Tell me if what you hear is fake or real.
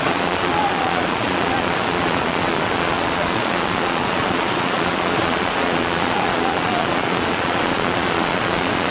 fake